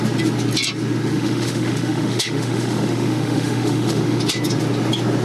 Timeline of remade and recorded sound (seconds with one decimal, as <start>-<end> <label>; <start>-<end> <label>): 0.0-1.1 recorded; 1.1-4.2 remade; 4.2-5.2 recorded